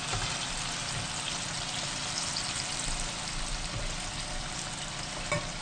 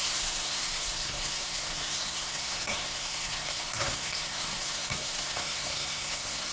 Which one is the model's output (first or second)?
second